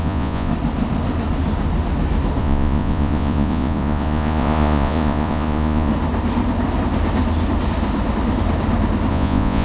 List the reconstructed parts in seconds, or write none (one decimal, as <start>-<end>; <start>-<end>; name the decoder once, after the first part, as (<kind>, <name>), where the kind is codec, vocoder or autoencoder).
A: 0.0-0.5 (vocoder, Vocos); 2.4-5.9; 9.1-9.6